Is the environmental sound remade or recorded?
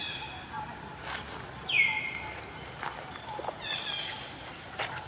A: recorded